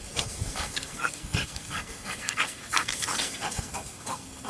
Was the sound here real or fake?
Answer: fake